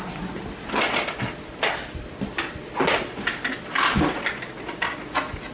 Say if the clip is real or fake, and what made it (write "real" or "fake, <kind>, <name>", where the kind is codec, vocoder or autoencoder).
real